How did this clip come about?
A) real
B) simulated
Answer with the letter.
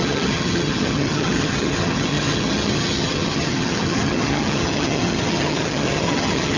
B